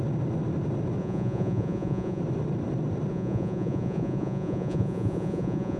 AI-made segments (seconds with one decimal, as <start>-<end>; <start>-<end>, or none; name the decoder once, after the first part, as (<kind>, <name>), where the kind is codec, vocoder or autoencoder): 1.0-2.2 (vocoder, Vocos); 3.1-5.8